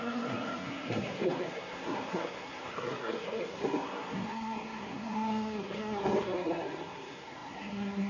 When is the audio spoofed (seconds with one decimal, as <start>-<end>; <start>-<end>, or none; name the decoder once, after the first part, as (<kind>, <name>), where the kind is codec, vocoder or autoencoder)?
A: 0.0-8.1 (codec, SNAC)